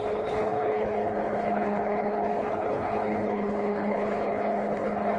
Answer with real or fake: fake